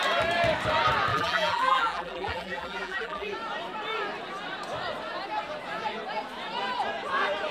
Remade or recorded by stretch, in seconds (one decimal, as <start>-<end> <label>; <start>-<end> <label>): 0.0-1.1 recorded; 1.1-3.3 remade; 3.3-7.5 recorded